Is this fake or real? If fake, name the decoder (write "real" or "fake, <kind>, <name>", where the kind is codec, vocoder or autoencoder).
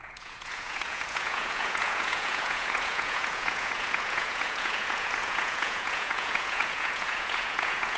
fake, vocoder, Vocos